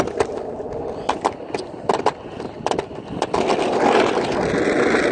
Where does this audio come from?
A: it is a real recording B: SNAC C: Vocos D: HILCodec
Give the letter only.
A